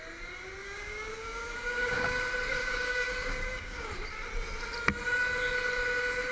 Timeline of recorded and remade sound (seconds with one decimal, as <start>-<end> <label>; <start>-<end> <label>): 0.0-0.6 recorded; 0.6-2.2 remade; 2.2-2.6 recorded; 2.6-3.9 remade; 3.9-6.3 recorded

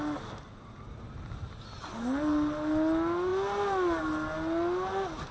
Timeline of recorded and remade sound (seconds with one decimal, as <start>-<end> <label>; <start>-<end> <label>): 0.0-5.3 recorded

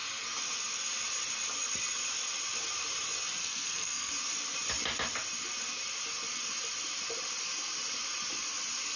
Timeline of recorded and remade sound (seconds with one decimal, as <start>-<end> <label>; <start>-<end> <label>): 0.0-3.4 recorded; 3.4-4.1 remade; 4.1-9.0 recorded